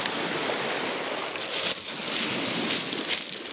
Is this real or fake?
real